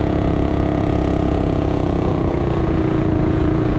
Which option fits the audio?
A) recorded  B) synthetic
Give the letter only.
B